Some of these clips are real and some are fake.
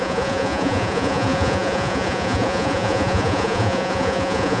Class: fake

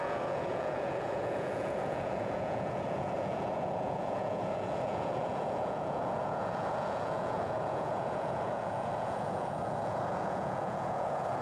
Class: fake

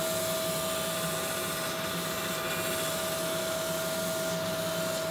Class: real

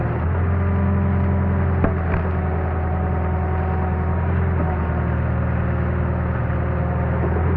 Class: real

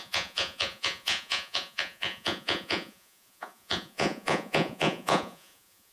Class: fake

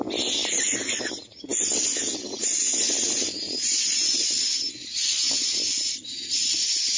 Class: real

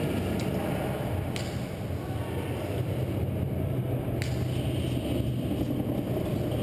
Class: real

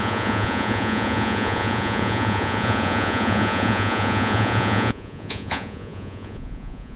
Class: fake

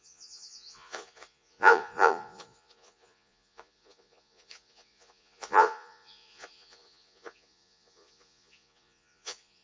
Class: fake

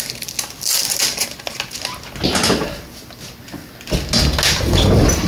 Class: real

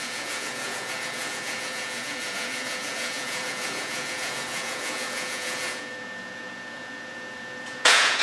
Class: fake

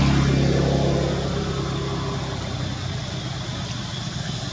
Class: real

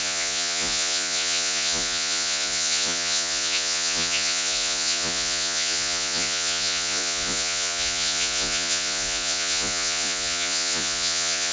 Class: fake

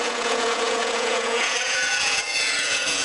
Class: fake